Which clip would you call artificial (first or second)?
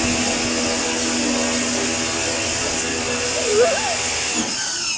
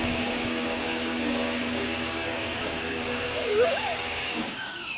second